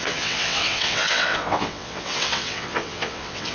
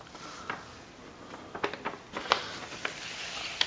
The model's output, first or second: first